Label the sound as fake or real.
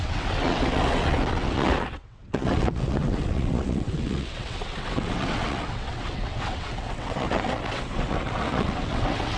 fake